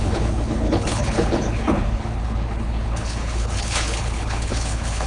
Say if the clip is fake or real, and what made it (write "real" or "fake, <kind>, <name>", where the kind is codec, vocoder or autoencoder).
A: fake, codec, HILCodec